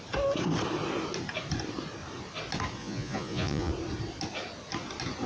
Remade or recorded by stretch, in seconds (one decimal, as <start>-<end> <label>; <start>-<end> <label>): 0.0-2.8 recorded; 2.8-3.7 remade; 3.7-5.3 recorded